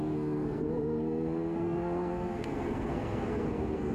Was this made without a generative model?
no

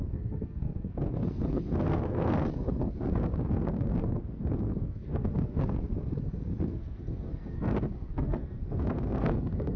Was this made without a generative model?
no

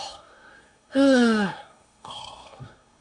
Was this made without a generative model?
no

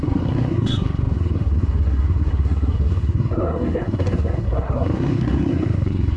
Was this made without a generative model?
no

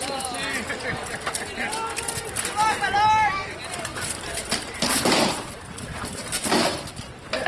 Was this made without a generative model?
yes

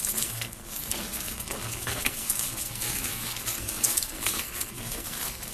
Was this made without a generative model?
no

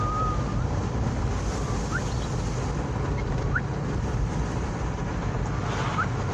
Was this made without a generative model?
yes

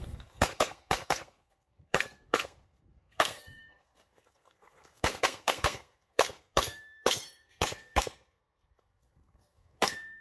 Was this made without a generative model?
no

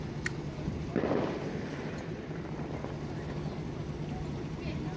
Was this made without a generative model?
yes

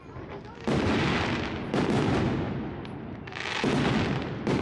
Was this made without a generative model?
yes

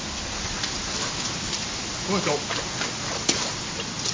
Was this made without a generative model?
yes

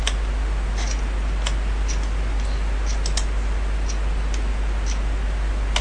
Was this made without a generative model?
yes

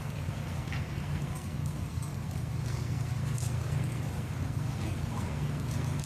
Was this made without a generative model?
no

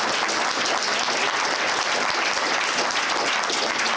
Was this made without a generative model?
yes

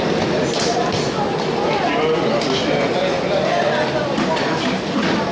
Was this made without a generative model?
yes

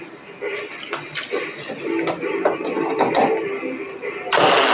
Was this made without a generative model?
yes